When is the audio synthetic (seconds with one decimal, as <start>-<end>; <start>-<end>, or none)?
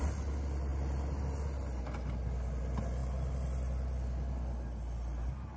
none